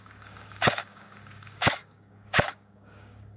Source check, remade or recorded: remade